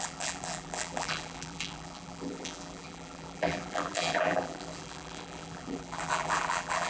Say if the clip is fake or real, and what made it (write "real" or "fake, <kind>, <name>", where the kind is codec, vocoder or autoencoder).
fake, vocoder, BigVGAN v2